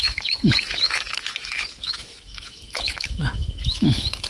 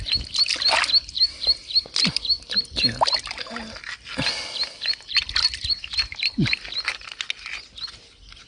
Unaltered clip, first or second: second